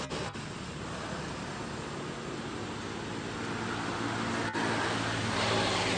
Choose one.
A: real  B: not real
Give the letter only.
A